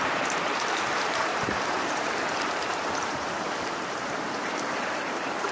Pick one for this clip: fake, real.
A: fake